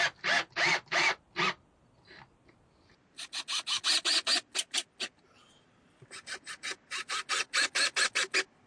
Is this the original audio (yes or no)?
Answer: yes